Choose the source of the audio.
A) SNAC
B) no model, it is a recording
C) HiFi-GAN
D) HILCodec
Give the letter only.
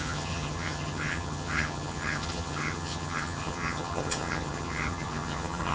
C